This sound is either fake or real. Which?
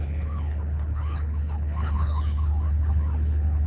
fake